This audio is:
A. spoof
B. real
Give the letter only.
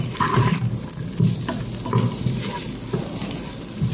B